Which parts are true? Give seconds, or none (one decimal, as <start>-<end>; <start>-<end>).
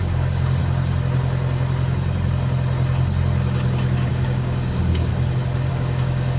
0.6-4.1; 5.1-5.7